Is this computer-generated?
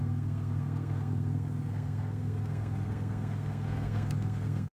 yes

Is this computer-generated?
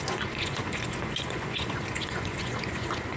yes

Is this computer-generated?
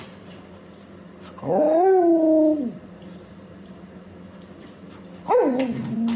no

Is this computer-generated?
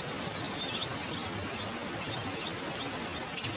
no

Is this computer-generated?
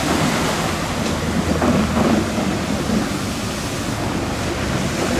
no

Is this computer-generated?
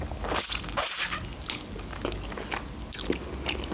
no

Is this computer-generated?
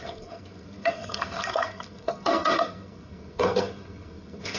yes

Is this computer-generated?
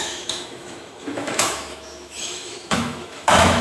yes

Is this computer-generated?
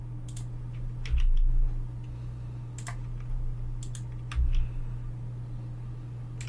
no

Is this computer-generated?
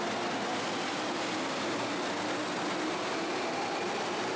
no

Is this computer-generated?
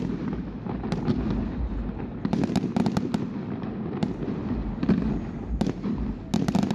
no